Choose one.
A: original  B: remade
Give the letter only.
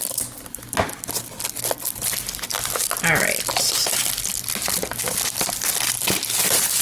A